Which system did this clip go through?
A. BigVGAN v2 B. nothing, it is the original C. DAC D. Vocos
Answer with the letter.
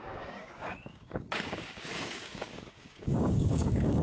C